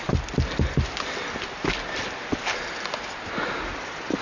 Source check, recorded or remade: recorded